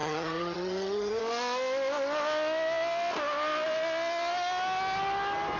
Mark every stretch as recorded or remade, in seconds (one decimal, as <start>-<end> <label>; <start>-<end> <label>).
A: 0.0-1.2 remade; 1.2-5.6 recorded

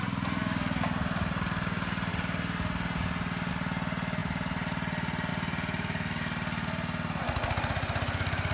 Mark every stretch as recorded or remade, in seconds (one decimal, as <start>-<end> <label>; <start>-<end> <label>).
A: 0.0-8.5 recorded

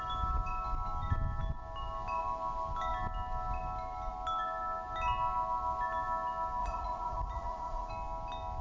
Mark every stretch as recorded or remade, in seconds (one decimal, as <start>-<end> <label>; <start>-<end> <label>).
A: 0.0-6.6 recorded; 6.6-7.9 remade; 7.9-8.6 recorded